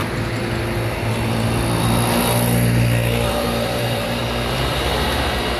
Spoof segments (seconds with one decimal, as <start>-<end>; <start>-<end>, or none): 3.3-4.2; 4.7-5.6